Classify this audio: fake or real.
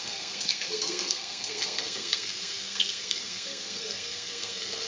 fake